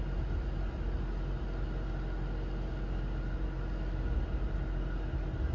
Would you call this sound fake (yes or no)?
no